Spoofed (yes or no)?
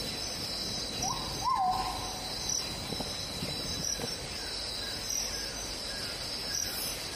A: no